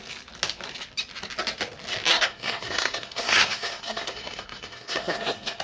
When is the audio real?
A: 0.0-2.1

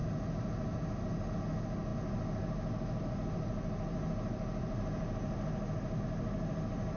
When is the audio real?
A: 0.0-7.0